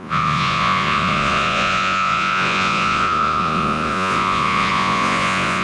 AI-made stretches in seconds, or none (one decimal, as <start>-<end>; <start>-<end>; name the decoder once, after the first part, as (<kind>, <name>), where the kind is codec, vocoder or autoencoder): 0.0-5.6 (vocoder, Vocos)